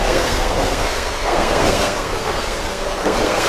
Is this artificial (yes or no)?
yes